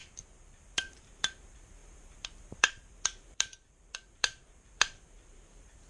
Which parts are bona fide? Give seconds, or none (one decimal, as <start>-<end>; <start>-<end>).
none